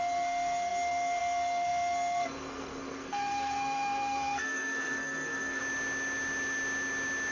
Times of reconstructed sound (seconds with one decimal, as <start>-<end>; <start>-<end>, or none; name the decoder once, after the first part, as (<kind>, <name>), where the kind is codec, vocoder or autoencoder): 0.0-5.6 (codec, SNAC)